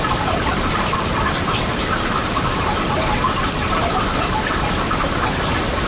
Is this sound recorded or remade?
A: remade